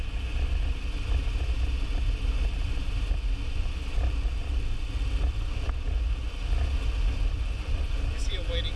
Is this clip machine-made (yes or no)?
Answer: no